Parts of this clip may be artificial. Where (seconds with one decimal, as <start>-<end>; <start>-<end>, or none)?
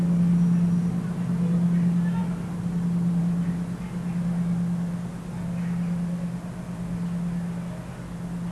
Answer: none